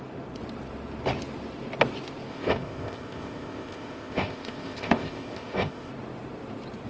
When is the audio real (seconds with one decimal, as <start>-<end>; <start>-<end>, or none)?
0.0-2.3; 5.9-6.9